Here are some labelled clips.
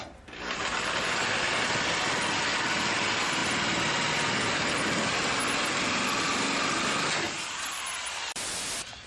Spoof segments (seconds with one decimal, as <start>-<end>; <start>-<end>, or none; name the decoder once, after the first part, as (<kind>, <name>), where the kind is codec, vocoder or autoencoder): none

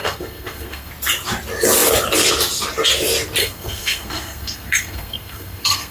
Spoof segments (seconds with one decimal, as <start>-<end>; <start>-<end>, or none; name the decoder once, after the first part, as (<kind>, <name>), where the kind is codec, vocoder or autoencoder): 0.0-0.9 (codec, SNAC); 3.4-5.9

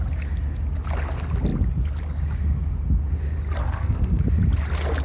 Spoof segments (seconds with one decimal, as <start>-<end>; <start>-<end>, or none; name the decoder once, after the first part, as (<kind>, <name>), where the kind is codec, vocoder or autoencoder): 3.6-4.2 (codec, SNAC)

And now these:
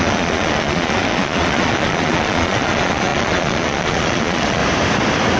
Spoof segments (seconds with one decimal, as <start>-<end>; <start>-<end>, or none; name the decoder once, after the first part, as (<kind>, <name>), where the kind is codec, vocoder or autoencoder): 0.0-4.6 (vocoder, Vocos)

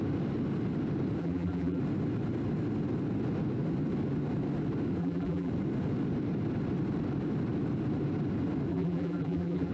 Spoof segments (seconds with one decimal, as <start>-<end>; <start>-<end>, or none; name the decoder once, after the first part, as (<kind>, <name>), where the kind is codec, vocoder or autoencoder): 1.2-1.8 (vocoder, BigVGAN v2); 5.0-5.5; 8.7-9.7

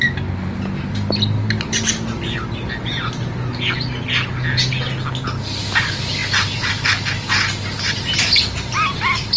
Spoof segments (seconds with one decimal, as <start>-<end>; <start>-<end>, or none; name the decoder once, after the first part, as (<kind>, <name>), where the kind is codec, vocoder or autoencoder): none